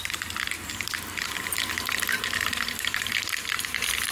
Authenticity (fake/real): fake